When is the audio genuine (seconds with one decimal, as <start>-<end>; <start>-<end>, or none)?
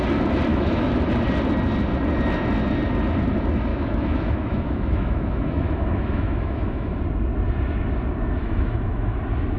0.0-0.5; 1.0-3.7; 7.0-8.4; 9.2-9.6